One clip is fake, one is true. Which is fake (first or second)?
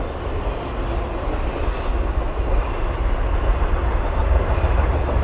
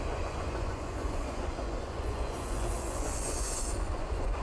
second